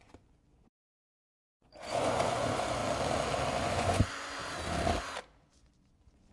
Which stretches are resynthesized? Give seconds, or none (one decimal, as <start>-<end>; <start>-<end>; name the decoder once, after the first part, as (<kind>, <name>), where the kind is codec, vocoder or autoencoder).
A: 0.0-2.8 (vocoder, Vocos); 3.5-4.4; 5.5-6.3